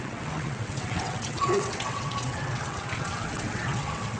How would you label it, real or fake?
fake